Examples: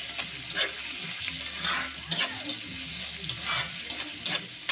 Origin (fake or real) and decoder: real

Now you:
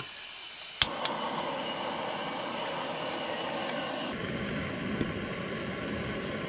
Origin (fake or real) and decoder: real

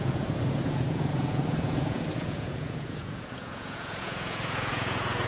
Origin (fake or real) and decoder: fake, vocoder, Vocos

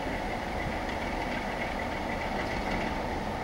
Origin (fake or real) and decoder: real